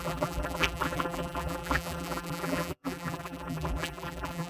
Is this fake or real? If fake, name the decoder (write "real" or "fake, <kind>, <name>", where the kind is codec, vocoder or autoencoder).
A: fake, vocoder, BigVGAN v2